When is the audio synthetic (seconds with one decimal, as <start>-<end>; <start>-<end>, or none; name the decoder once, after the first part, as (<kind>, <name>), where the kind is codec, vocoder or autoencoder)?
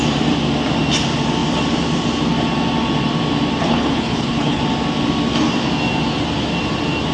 3.6-4.6 (codec, HILCodec)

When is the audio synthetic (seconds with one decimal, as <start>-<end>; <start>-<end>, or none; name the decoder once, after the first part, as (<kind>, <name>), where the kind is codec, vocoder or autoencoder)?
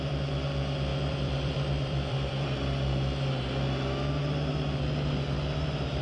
0.9-2.3 (vocoder, BigVGAN v2)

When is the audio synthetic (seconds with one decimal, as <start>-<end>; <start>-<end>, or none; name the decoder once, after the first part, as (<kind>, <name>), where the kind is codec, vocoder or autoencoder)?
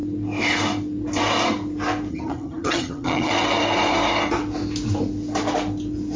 2.1-3.3 (vocoder, HiFi-GAN)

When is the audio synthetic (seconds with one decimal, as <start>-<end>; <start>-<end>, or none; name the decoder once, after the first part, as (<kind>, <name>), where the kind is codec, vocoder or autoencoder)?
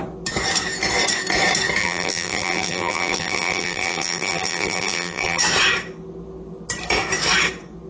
1.8-5.4 (vocoder, BigVGAN v2)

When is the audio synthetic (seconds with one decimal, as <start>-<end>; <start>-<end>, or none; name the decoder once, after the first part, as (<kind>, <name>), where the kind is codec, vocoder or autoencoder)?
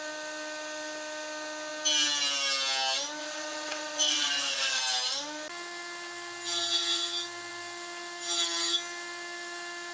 3.2-4.8 (vocoder, WaveNeXt)